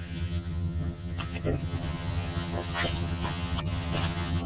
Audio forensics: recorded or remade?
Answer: remade